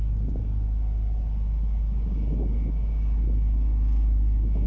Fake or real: real